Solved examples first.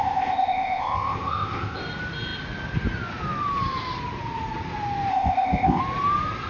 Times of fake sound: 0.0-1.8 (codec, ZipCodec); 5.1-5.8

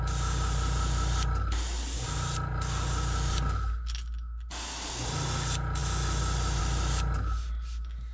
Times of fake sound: none

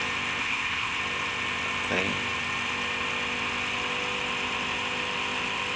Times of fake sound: 0.4-1.0 (codec, ZipCodec)

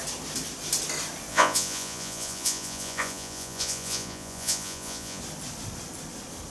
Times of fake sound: 1.3-5.2 (vocoder, Vocos)

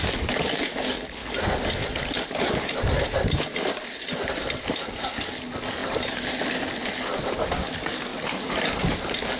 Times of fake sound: 1.2-4.8 (vocoder, BigVGAN v2); 5.8-6.6

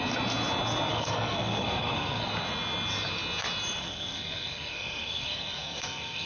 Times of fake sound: 0.9-2.3 (codec, SNAC); 3.8-6.3

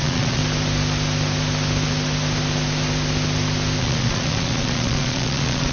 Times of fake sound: 0.0-0.4 (vocoder, Vocos); 3.8-5.7